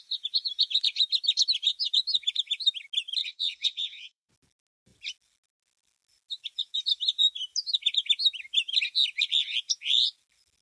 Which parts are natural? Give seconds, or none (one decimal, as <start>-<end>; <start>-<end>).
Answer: 0.0-3.2; 4.3-10.6